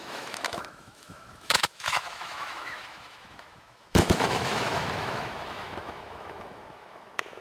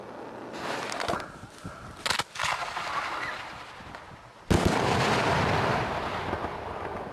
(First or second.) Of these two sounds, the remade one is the first